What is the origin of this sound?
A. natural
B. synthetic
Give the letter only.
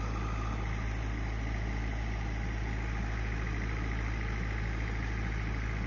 A